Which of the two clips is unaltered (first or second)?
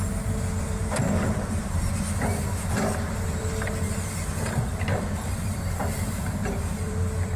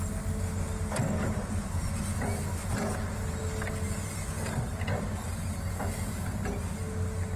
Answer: second